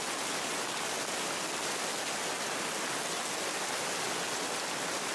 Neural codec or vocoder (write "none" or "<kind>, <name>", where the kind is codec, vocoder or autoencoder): none